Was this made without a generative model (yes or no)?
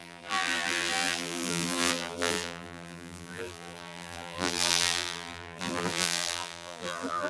no